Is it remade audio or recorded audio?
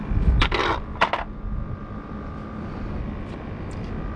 recorded